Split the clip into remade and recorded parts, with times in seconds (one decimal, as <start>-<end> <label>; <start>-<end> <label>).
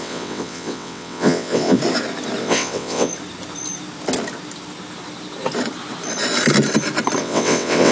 0.0-1.8 remade; 1.8-2.4 recorded; 2.4-3.1 remade; 3.1-7.2 recorded; 7.2-7.9 remade